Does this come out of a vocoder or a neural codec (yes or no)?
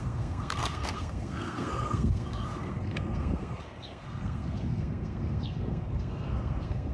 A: yes